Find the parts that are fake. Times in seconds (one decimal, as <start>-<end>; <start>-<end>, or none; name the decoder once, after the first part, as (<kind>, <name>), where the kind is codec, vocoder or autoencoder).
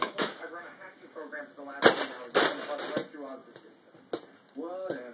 0.0-1.4 (autoencoder, DAC-VAE)